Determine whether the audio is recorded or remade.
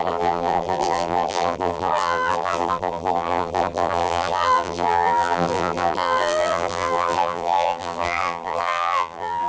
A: remade